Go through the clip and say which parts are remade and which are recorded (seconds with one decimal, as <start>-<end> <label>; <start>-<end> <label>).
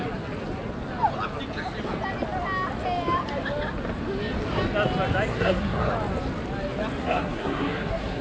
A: 0.0-5.3 recorded; 5.3-5.9 remade; 5.9-7.0 recorded; 7.0-8.2 remade